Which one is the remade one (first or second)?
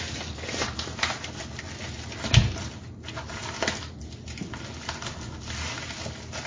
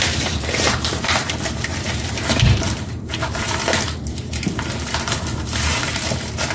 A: second